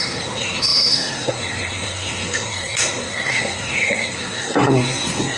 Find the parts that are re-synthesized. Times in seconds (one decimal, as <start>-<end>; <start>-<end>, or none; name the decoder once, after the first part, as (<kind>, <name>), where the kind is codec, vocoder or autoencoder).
0.0-5.4 (codec, SNAC)